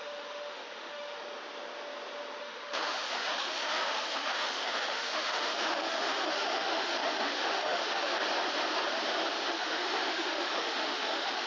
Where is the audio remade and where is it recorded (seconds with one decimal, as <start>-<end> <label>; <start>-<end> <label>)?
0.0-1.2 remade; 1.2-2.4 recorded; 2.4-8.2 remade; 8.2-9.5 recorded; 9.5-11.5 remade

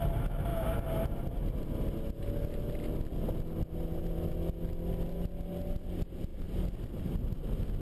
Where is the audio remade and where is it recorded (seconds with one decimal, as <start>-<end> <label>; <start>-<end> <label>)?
0.0-7.8 recorded

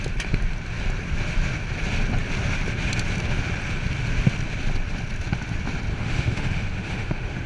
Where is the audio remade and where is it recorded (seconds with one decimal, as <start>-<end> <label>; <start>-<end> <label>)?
0.0-5.9 recorded; 5.9-7.5 remade

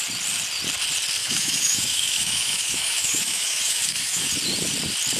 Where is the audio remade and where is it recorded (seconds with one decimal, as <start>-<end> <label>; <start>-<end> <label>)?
0.0-1.2 recorded; 1.2-4.3 remade; 4.3-5.2 recorded

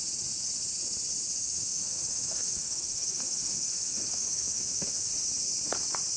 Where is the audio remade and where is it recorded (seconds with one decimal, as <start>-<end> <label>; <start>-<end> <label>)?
0.0-1.4 recorded; 1.4-5.1 remade; 5.1-6.2 recorded

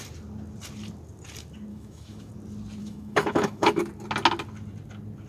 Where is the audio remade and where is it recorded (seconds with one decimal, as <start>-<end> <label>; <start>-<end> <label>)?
0.0-1.7 recorded; 1.7-2.3 remade; 2.3-2.8 recorded; 2.8-3.8 remade; 3.8-5.3 recorded

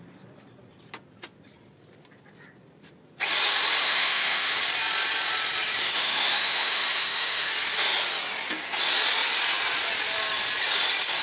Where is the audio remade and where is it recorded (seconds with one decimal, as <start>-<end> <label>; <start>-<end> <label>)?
0.0-3.8 recorded; 3.8-4.6 remade; 4.6-5.8 recorded; 5.8-7.5 remade; 7.5-11.2 recorded